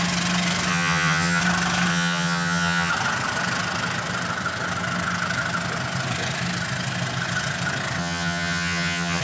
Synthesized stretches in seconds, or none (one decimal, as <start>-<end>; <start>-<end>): 0.7-1.4; 1.9-2.9; 8.0-9.2

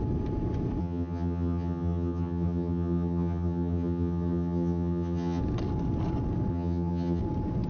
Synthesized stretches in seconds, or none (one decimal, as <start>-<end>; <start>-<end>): 0.8-5.4; 6.5-7.2

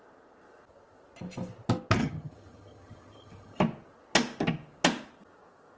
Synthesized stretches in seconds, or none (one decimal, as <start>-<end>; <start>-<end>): 2.0-3.6

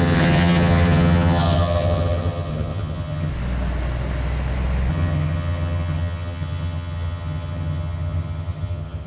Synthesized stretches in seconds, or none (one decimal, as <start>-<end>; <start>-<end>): 0.0-3.3; 4.9-9.1